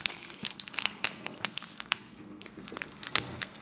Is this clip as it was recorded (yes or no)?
no